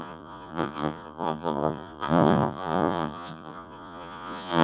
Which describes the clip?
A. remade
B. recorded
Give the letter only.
A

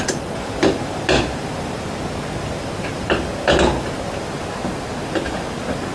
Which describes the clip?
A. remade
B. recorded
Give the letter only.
B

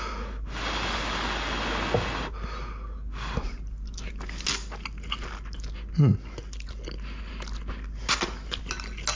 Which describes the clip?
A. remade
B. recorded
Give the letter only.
B